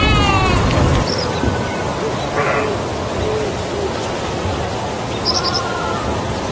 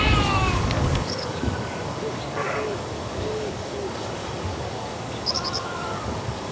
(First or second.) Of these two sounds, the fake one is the second